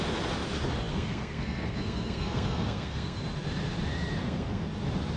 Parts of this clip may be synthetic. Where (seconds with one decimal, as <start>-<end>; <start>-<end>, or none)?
0.9-3.2; 4.2-4.7